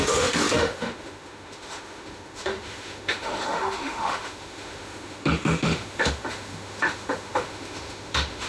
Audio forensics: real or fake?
fake